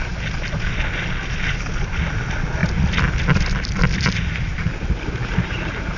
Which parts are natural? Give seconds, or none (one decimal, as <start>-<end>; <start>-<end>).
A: 0.0-6.0